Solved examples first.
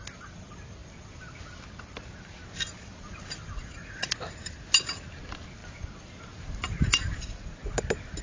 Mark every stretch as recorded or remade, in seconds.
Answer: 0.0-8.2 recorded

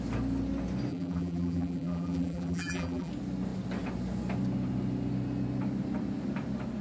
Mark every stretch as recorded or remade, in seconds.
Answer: 0.0-0.9 recorded; 0.9-3.1 remade; 3.1-6.8 recorded

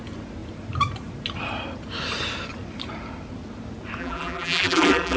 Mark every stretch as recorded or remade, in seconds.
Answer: 0.0-4.0 recorded; 4.0-5.2 remade